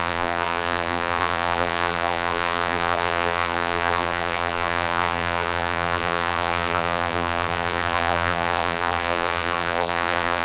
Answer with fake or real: fake